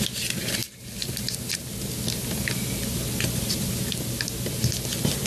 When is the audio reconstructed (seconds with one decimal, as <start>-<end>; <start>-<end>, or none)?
0.6-1.9

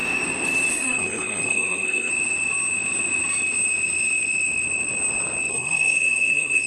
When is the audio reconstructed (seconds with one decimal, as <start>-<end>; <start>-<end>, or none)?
0.7-2.1; 5.5-6.7